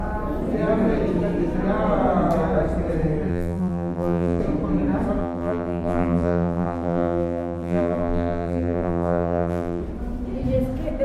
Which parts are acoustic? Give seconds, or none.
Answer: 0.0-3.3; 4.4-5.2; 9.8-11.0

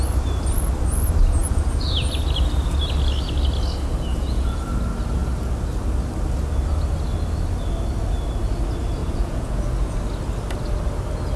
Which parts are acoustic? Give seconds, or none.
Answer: 0.0-1.4; 2.1-4.1; 4.6-9.0; 9.7-11.4

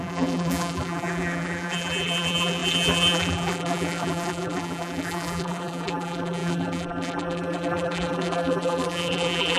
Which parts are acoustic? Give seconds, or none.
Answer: none

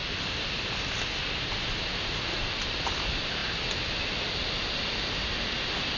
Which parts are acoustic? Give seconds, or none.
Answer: 0.0-6.0

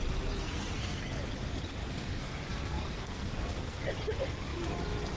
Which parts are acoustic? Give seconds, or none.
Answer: 0.0-0.4; 1.0-1.8; 3.8-5.2

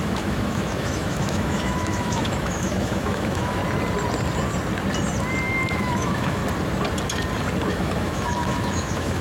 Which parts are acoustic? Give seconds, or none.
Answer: 3.6-5.7; 6.4-7.7

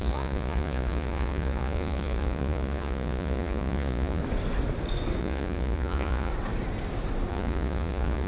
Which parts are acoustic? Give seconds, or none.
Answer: 4.2-5.2; 6.3-7.3